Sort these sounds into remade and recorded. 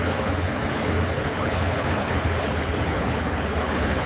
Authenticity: remade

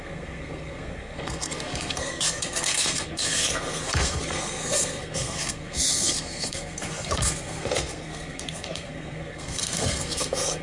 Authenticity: remade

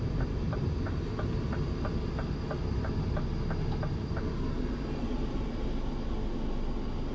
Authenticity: recorded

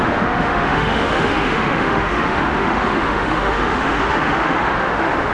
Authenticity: remade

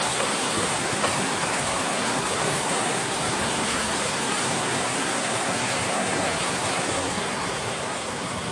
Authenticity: remade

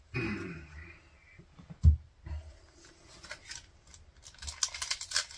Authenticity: recorded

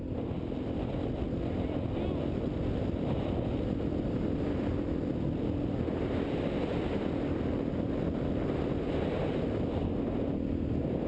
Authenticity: recorded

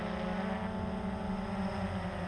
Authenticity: recorded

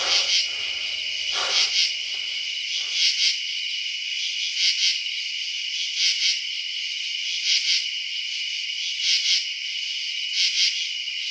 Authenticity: recorded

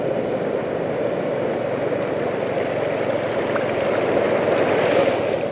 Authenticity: recorded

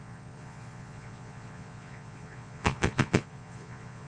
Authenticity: remade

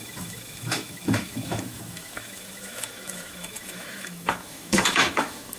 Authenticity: remade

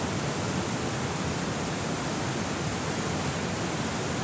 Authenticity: recorded